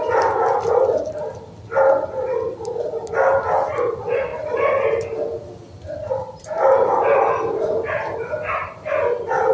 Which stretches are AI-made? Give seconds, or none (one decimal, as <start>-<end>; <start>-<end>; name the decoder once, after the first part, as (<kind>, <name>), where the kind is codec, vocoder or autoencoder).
none